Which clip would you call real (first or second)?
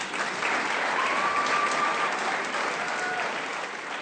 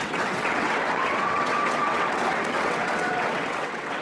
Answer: first